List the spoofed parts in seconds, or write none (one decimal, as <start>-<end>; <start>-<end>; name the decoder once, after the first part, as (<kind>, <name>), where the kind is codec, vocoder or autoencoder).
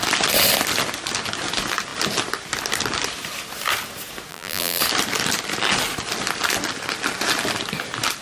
4.3-4.8 (vocoder, BigVGAN v2)